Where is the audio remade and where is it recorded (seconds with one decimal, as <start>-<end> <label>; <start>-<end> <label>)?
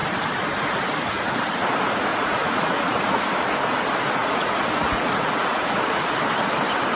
0.0-2.1 recorded; 2.1-3.2 remade; 3.2-4.2 recorded; 4.2-6.1 remade; 6.1-7.0 recorded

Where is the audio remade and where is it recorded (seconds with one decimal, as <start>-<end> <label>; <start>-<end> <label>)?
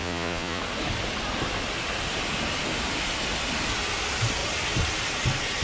0.0-0.6 remade; 0.6-5.6 recorded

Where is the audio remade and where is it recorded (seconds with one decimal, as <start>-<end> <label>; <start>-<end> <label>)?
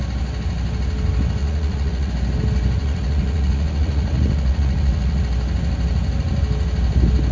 0.0-1.4 recorded; 1.4-2.1 remade; 2.1-2.8 recorded; 2.8-5.2 remade; 5.2-7.3 recorded